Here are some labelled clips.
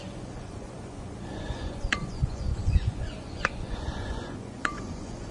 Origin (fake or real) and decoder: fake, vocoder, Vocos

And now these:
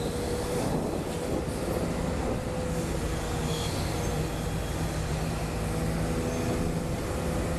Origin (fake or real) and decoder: real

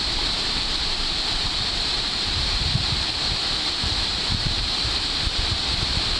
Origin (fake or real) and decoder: fake, vocoder, BigVGAN v2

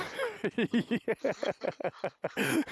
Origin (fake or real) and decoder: real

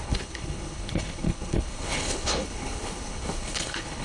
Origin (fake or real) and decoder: fake, codec, HILCodec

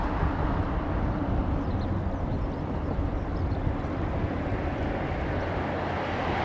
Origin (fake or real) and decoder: real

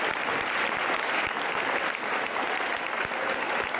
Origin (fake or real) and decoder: real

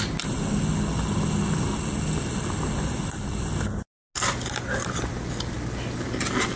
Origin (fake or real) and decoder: real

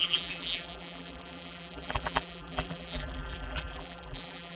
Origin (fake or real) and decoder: fake, vocoder, BigVGAN v2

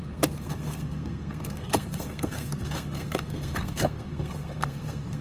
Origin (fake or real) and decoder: fake, codec, SNAC